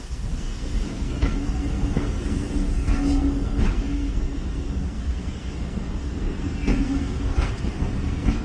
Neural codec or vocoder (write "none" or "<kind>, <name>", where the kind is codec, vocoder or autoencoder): codec, SNAC